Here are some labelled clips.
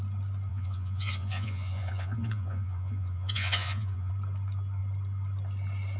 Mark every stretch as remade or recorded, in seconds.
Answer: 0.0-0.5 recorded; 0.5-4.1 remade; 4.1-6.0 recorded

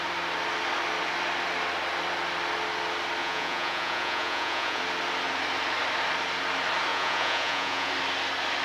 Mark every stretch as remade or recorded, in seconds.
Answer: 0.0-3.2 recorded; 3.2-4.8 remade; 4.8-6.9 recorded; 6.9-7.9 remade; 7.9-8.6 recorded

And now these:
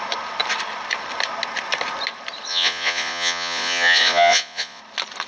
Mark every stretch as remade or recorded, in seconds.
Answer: 0.0-2.5 recorded; 2.5-4.8 remade; 4.8-5.3 recorded

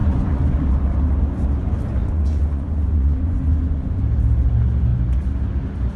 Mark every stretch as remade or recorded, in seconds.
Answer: 0.0-0.7 remade; 0.7-2.0 recorded; 2.0-4.0 remade; 4.0-6.0 recorded

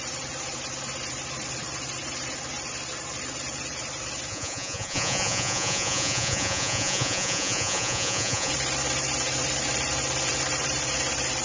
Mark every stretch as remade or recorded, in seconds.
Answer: 0.0-4.3 recorded; 4.3-8.5 remade; 8.5-11.4 recorded

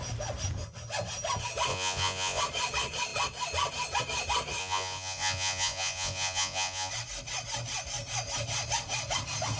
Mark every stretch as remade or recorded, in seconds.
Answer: 0.0-1.7 recorded; 1.7-2.4 remade; 2.4-4.6 recorded; 4.6-6.9 remade; 6.9-9.6 recorded

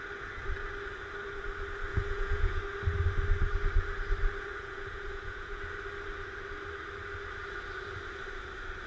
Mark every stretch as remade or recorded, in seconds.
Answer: 0.0-1.9 recorded; 1.9-2.6 remade; 2.6-4.5 recorded; 4.5-5.6 remade; 5.6-8.9 recorded